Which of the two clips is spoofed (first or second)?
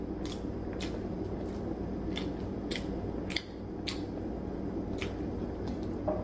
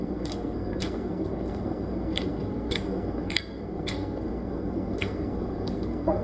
second